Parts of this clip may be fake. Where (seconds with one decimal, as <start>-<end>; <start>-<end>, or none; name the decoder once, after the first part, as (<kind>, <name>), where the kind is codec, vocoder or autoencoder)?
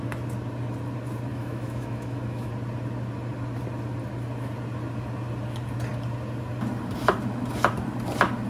1.3-2.5 (autoencoder, DAC-VAE)